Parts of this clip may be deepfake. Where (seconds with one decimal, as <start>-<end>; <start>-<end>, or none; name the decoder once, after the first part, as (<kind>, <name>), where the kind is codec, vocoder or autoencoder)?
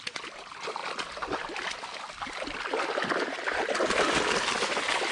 none